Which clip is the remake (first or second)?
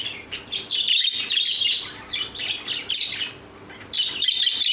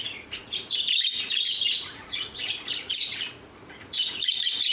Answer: second